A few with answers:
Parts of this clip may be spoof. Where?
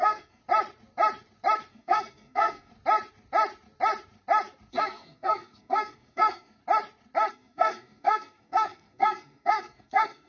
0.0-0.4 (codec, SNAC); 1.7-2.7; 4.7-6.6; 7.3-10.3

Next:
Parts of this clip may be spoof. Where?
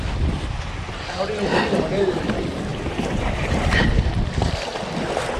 2.7-3.7 (vocoder, BigVGAN v2)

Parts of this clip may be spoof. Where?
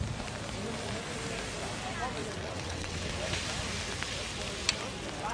2.2-3.1 (vocoder, WaveNeXt)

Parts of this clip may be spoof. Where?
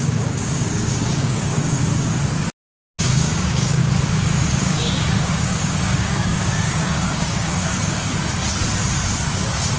0.0-1.8 (codec, DAC); 3.0-3.8; 4.6-8.1